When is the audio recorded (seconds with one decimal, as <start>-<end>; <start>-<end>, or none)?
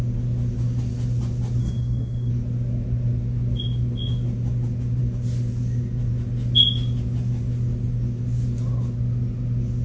0.0-1.6; 2.3-9.8